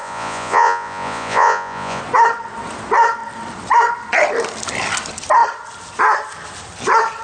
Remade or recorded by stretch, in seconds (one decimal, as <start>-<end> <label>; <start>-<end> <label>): 0.0-2.0 remade; 2.0-7.2 recorded